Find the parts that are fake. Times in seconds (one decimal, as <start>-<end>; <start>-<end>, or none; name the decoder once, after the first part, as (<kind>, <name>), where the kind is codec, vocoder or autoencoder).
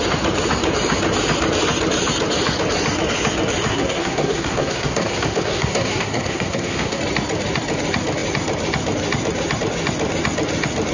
3.7-7.0 (codec, SNAC)